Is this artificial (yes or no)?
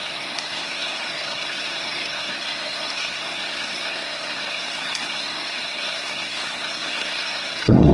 yes